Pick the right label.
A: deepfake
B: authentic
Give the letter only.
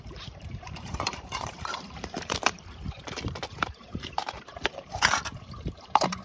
A